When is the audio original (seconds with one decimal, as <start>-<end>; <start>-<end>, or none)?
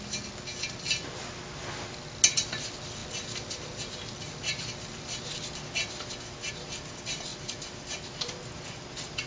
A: 0.0-9.3